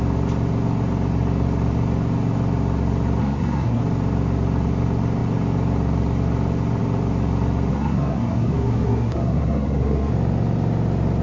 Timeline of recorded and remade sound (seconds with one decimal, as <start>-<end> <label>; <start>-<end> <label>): 0.0-3.2 recorded; 3.2-3.8 remade; 3.8-7.7 recorded; 7.7-10.1 remade; 10.1-11.2 recorded